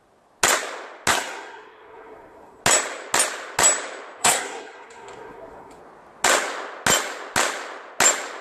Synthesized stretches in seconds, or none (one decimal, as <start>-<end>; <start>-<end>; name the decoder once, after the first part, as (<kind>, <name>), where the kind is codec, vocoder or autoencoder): 1.1-2.6 (codec, SNAC); 4.2-5.8